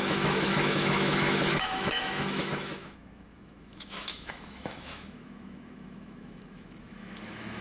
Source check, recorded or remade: remade